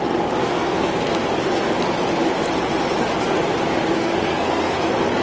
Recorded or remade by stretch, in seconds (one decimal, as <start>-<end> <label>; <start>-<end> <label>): 0.0-0.4 recorded; 0.4-0.9 remade; 0.9-4.0 recorded; 4.0-4.7 remade; 4.7-5.2 recorded